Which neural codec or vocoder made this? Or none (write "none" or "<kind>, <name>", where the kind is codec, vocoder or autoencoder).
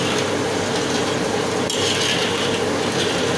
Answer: none